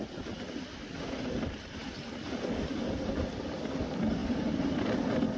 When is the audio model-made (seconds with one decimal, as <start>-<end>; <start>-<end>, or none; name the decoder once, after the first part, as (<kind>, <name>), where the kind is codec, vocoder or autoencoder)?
none